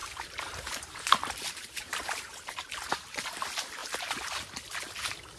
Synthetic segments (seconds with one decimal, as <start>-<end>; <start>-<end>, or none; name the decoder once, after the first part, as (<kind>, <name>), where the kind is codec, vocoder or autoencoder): 0.0-3.2 (vocoder, BigVGAN v2); 3.8-4.4